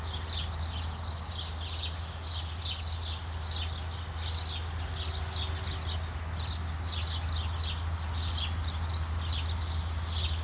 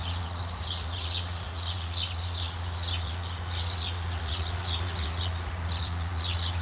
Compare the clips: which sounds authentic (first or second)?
first